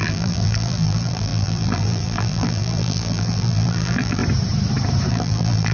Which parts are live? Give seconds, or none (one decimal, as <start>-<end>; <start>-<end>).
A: 4.2-5.1